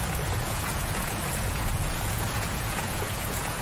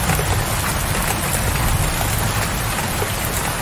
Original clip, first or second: second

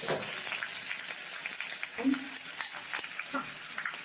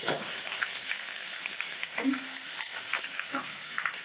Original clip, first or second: first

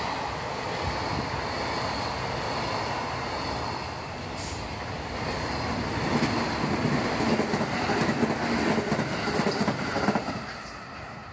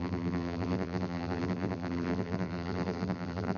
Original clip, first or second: first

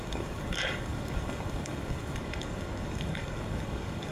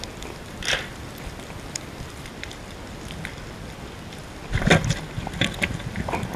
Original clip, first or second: second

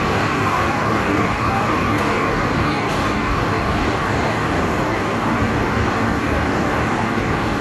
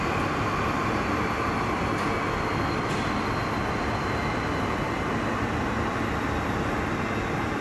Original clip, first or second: second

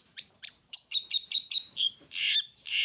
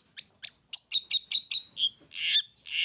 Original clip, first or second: second